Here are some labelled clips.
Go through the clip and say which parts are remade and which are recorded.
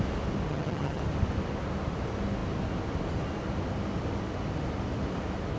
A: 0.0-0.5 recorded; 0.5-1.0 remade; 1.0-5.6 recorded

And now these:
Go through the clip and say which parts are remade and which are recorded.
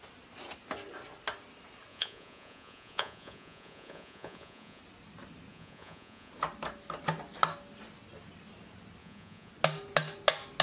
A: 0.0-1.9 recorded; 1.9-4.8 remade; 4.8-5.5 recorded; 5.5-6.3 remade; 6.3-9.0 recorded; 9.0-9.5 remade; 9.5-10.6 recorded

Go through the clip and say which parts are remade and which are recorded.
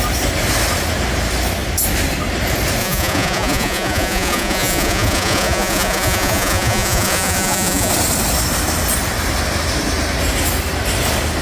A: 0.0-2.8 recorded; 2.8-7.9 remade; 7.9-11.4 recorded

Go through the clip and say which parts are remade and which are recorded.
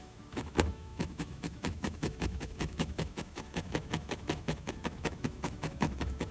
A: 0.0-6.3 remade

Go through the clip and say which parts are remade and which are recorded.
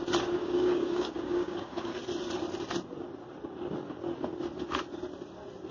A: 0.0-0.4 recorded; 0.4-1.9 remade; 1.9-5.7 recorded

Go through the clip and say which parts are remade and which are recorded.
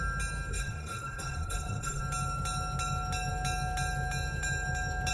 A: 0.0-0.5 recorded; 0.5-2.0 remade; 2.0-5.1 recorded